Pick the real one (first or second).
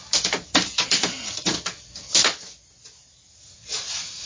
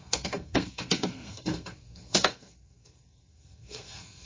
first